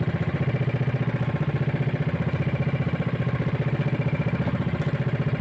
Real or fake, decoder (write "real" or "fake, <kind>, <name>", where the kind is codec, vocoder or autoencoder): real